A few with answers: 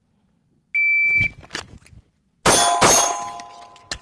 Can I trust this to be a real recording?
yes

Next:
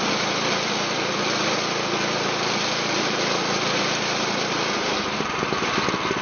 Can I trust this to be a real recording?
yes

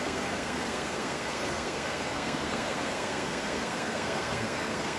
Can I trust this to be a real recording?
no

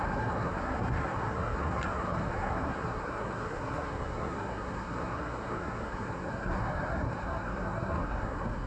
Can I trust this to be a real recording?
no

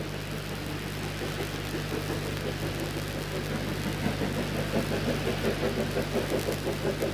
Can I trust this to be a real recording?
yes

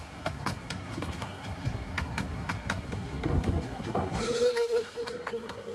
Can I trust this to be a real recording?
no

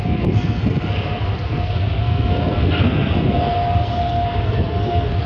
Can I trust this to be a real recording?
no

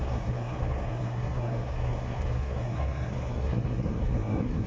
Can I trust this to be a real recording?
no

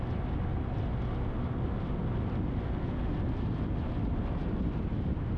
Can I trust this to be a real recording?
yes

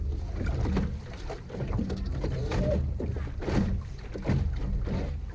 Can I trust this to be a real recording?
yes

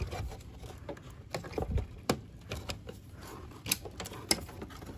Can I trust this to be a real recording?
yes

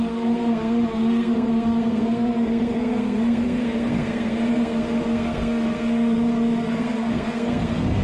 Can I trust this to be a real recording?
no